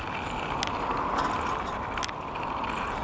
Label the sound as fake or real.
real